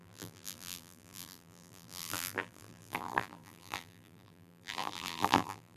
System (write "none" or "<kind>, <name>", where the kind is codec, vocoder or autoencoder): vocoder, BigVGAN v2